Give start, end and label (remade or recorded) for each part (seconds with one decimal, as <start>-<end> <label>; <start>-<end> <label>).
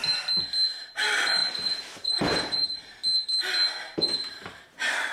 0.0-0.8 recorded; 0.8-3.0 remade; 3.0-3.8 recorded; 3.8-5.1 remade